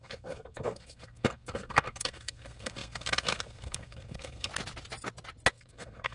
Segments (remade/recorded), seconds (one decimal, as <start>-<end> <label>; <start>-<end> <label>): 0.0-4.5 remade; 4.5-5.5 recorded; 5.5-6.1 remade